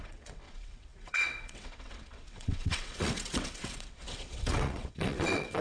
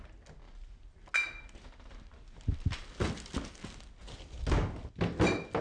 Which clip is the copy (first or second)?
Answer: first